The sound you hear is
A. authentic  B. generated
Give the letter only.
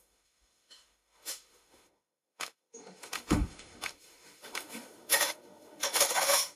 B